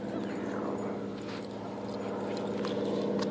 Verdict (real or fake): real